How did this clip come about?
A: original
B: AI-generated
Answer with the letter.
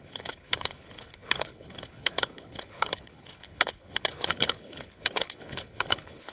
B